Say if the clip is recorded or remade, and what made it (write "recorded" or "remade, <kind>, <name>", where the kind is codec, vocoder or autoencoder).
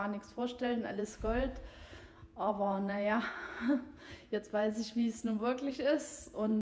remade, vocoder, Vocos